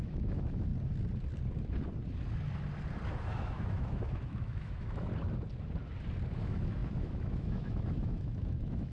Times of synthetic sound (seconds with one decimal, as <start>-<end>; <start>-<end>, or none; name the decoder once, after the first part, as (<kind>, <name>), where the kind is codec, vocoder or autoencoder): 0.0-0.7 (autoencoder, DAC-VAE); 3.1-5.1; 6.3-8.9